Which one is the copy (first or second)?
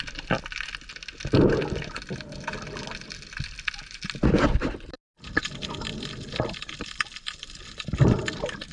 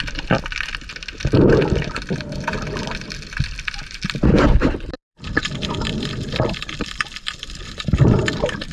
second